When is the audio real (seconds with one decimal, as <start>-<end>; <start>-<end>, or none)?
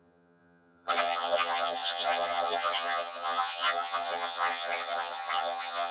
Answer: none